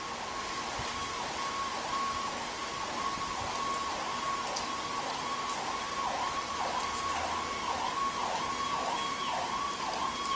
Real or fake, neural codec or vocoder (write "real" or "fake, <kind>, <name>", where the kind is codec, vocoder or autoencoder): real